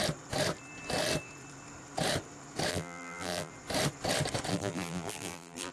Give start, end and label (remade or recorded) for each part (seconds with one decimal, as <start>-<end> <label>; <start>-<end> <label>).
0.0-2.7 recorded; 2.7-3.5 remade; 3.5-4.5 recorded; 4.5-5.7 remade